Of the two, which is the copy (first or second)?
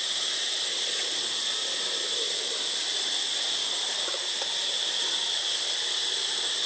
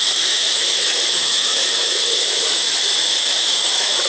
second